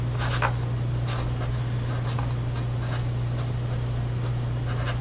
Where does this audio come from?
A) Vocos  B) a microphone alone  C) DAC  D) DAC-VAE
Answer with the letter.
B